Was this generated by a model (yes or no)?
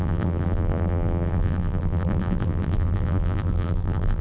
yes